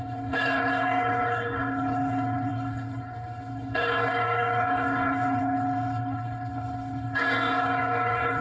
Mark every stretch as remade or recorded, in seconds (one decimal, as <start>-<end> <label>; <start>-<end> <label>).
0.0-8.4 remade